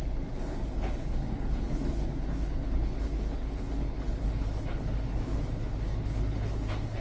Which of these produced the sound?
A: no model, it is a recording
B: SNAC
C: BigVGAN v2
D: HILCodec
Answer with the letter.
D